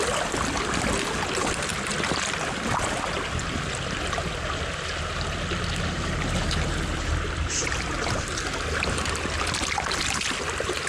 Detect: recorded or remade recorded